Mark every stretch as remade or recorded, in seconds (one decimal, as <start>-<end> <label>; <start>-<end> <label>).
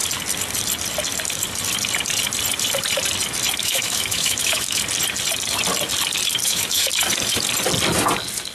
0.0-3.6 recorded; 3.6-4.8 remade; 4.8-6.4 recorded; 6.4-6.9 remade; 6.9-8.5 recorded